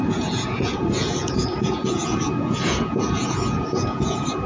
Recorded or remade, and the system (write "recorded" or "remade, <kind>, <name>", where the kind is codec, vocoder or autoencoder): remade, vocoder, Vocos